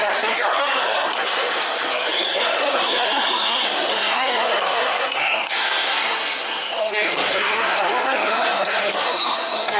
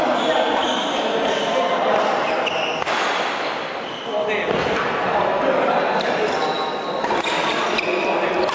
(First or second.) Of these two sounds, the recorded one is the second